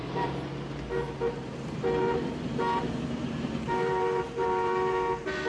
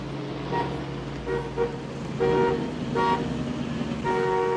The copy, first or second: first